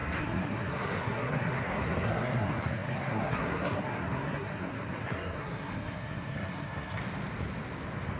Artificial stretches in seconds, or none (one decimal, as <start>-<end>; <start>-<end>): 0.0-7.0